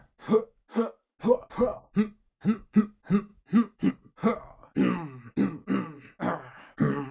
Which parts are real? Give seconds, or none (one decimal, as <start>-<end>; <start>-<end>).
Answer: 0.0-1.7; 2.8-3.3; 3.9-7.1

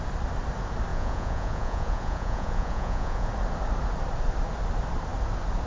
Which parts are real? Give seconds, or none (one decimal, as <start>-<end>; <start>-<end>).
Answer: 0.0-0.9; 3.3-5.7